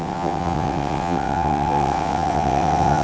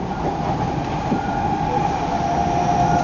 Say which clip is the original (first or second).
second